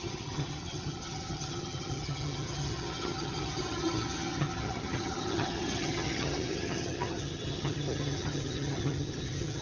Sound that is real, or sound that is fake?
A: fake